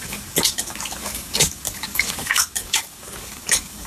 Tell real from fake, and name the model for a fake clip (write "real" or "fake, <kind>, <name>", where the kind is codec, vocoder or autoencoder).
fake, codec, DAC